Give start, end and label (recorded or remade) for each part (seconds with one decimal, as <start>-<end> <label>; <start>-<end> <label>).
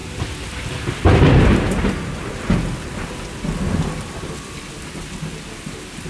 0.0-6.1 recorded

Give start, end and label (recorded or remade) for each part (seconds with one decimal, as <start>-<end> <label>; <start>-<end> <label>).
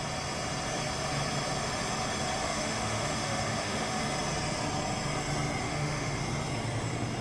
0.0-2.4 recorded; 2.4-4.0 remade; 4.0-5.6 recorded; 5.6-6.2 remade; 6.2-7.2 recorded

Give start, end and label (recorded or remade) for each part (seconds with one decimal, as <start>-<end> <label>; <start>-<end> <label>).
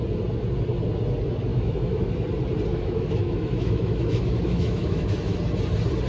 0.0-1.5 recorded; 1.5-2.1 remade; 2.1-2.7 recorded; 2.7-5.4 remade; 5.4-6.1 recorded